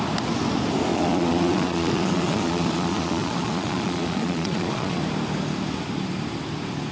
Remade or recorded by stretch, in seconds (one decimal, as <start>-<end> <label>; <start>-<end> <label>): 0.0-0.9 recorded; 0.9-5.0 remade; 5.0-6.9 recorded